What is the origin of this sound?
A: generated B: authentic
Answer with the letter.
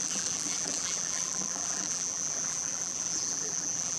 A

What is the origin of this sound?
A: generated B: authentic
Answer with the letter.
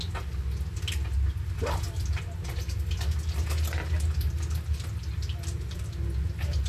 B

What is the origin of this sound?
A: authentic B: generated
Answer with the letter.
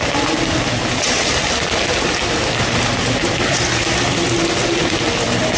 A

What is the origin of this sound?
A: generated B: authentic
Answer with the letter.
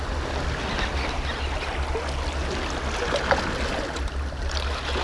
B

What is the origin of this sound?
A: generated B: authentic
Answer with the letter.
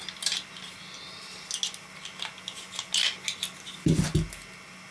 B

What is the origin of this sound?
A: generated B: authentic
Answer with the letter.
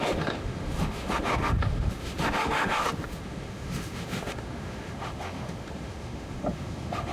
A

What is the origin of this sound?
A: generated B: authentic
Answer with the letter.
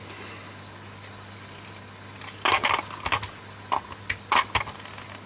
B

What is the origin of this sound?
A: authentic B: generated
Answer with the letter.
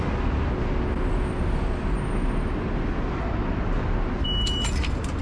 A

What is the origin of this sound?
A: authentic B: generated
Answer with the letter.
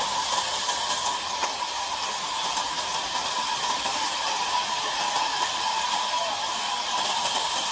B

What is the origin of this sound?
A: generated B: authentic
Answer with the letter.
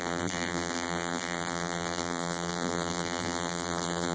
A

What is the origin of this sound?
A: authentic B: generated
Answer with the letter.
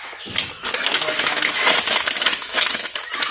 B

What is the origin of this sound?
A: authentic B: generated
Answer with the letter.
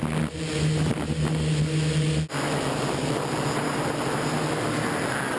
A